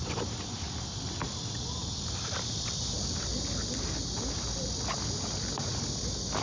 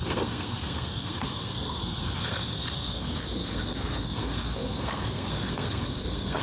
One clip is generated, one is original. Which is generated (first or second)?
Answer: second